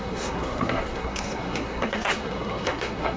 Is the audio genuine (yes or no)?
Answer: no